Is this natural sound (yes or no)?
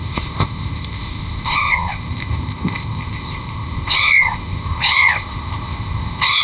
no